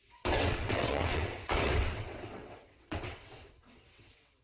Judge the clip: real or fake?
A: fake